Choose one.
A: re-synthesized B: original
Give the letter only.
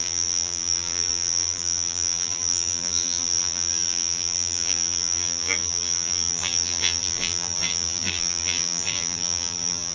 A